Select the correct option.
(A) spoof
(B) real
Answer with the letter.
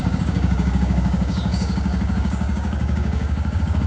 A